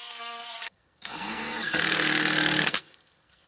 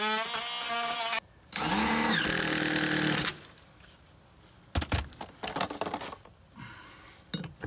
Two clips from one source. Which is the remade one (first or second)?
first